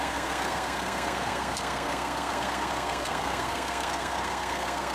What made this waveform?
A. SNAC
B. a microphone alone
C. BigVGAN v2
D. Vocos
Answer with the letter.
A